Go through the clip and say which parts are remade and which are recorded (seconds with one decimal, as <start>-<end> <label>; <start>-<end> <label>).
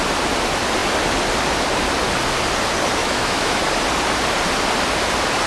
0.0-3.0 recorded; 3.0-3.6 remade; 3.6-5.5 recorded